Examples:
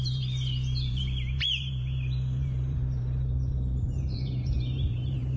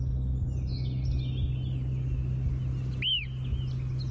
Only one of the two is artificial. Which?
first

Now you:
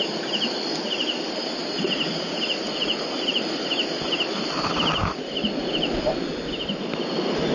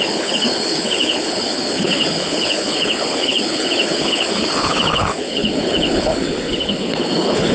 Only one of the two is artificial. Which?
second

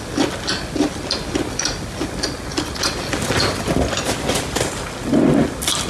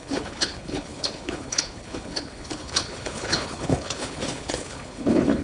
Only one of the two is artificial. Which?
second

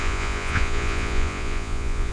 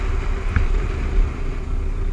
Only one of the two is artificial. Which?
first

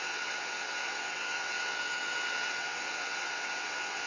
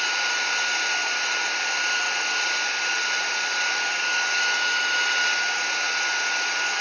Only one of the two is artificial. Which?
first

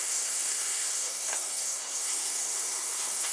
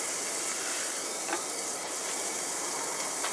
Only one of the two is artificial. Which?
first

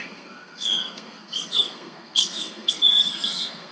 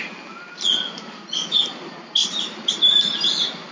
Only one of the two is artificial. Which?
first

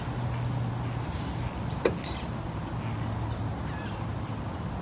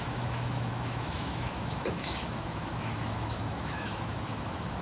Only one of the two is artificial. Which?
second